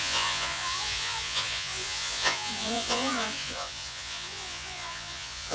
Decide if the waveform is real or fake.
fake